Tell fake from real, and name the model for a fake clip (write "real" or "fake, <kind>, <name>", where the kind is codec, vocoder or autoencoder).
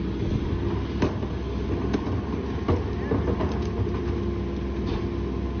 real